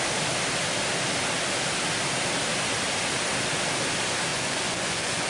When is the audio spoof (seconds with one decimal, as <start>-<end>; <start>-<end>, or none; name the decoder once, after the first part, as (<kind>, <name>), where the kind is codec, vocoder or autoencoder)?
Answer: 4.3-5.3 (vocoder, Vocos)